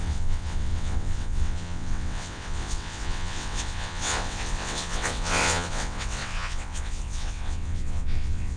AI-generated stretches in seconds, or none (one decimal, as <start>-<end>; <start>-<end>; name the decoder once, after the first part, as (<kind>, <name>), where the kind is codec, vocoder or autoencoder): 0.0-8.6 (vocoder, WaveNeXt)